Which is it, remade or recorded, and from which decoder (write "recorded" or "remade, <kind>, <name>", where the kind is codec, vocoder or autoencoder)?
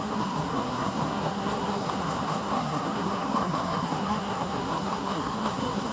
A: remade, codec, SNAC